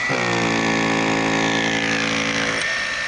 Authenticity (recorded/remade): recorded